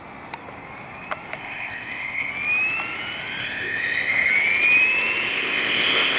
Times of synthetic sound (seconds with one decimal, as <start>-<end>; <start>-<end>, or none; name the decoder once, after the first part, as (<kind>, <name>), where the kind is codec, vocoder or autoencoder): 1.4-2.3 (codec, ZipCodec); 3.4-4.3; 5.3-6.2